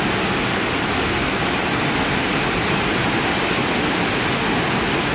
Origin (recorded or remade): recorded